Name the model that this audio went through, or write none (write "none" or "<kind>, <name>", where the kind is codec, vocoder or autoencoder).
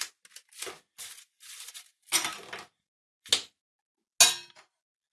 none